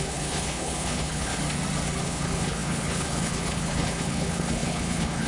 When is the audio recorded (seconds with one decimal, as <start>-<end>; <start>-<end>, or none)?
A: 1.4-2.0